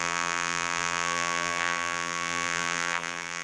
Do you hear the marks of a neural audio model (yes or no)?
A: yes